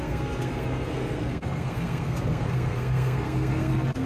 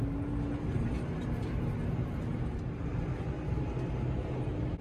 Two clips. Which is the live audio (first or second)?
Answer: second